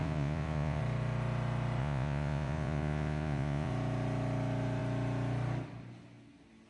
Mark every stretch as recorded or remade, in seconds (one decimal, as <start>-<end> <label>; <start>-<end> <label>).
0.0-0.8 remade; 0.8-1.8 recorded; 1.8-3.7 remade; 3.7-6.7 recorded